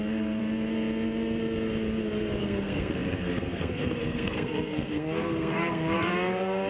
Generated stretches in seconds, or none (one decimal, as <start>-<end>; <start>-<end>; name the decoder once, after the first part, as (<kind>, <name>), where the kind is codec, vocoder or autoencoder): 0.0-0.4 (codec, SNAC); 2.4-6.7

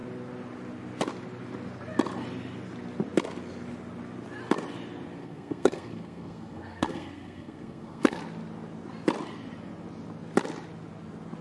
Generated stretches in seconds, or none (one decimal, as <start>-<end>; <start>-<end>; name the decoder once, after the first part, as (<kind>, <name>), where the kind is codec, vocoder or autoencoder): 5.2-8.2 (codec, SNAC)

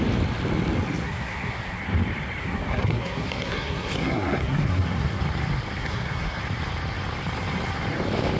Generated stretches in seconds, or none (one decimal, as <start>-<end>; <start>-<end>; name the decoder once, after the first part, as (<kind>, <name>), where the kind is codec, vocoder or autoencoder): 1.0-1.8 (codec, SNAC); 2.4-5.2; 5.8-6.4

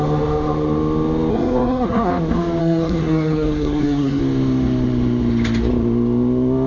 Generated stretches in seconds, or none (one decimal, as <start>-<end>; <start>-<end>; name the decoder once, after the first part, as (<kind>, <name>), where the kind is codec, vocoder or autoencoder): 1.3-2.1 (codec, SNAC); 2.6-4.2

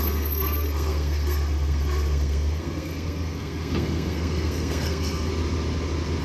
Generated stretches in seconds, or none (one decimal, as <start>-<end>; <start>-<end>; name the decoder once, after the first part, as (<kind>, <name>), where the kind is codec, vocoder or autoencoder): 0.0-5.3 (codec, SNAC)

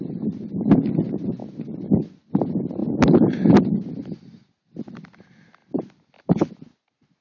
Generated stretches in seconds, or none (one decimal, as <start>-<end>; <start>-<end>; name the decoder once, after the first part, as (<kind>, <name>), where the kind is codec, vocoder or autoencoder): none

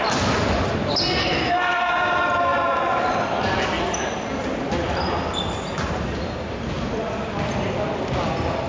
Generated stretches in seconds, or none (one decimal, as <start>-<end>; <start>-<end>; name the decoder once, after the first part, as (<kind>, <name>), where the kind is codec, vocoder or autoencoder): 1.2-1.9 (codec, SNAC)